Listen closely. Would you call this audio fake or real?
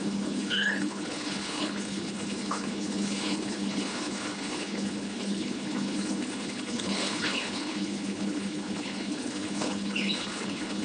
fake